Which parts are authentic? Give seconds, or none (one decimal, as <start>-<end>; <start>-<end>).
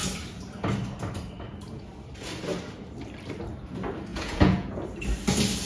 0.0-4.1; 4.8-5.7